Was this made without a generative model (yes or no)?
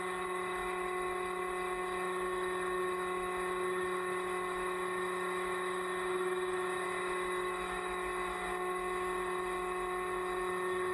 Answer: no